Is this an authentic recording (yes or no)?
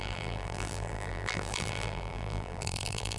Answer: no